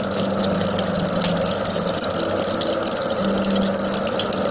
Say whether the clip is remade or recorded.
recorded